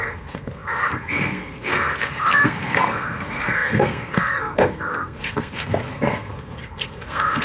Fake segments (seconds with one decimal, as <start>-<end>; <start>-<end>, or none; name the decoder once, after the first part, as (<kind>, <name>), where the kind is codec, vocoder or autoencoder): 0.0-7.4 (codec, SNAC)